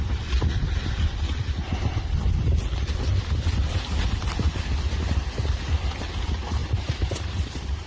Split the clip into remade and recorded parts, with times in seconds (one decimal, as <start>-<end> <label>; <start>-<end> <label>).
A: 0.0-6.6 recorded; 6.6-7.9 remade